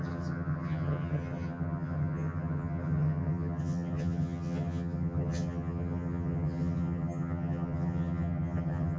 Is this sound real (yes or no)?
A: no